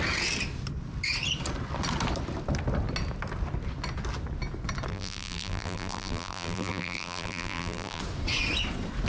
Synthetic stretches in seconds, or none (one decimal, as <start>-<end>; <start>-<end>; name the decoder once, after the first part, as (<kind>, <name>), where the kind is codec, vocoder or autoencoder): 4.9-8.0 (vocoder, BigVGAN v2)